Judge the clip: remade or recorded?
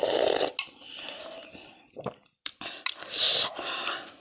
recorded